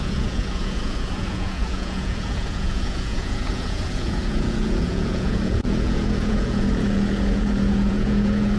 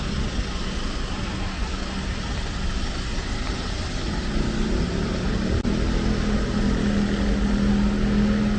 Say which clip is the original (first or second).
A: second